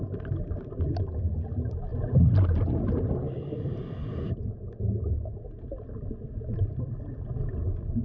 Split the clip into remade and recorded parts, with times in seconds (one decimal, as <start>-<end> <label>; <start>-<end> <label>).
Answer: 0.0-8.0 recorded